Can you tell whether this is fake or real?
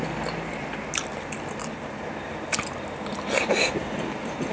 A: real